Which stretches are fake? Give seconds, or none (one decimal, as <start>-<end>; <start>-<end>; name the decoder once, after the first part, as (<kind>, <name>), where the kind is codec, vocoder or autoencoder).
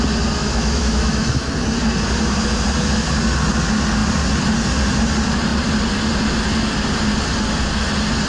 0.4-1.5 (autoencoder, DAC-VAE)